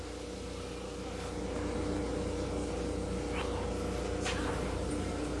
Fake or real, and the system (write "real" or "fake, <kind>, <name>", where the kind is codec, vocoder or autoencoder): real